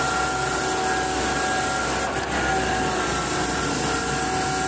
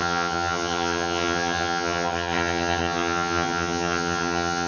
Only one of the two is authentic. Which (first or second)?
first